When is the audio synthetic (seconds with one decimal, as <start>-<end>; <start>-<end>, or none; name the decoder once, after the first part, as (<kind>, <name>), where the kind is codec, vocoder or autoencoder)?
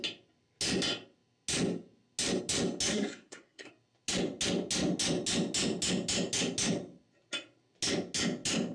2.9-3.7 (codec, SNAC)